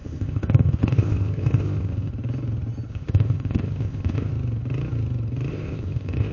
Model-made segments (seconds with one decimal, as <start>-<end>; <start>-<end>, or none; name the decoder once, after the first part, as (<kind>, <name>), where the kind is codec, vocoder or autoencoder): 0.0-2.1 (codec, ZipCodec); 2.9-4.3; 5.5-6.3